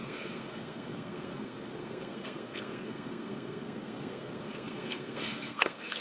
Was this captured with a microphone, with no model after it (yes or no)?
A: no